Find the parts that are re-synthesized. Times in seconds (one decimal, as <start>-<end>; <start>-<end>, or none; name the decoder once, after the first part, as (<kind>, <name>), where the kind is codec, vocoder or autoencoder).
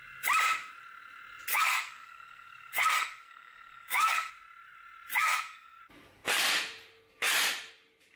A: 1.5-4.3 (codec, SNAC); 5.1-5.8